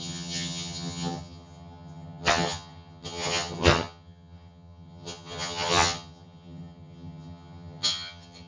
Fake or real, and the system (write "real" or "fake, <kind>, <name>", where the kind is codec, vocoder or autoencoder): fake, vocoder, HiFi-GAN